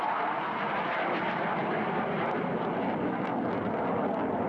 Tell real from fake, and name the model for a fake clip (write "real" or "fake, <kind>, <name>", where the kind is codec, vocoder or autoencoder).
real